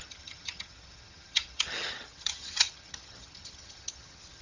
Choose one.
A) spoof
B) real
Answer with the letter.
A